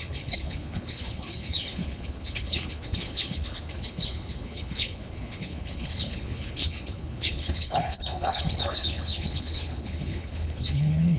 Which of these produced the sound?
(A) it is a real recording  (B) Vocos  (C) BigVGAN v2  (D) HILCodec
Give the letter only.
D